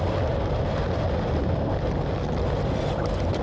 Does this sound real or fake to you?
real